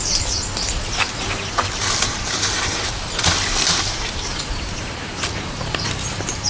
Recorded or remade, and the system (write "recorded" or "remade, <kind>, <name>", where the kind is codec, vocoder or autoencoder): remade, vocoder, BigVGAN v2